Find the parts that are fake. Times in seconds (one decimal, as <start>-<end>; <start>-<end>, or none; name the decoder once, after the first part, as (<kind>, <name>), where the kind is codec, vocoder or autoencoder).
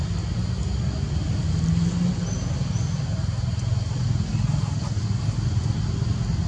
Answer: none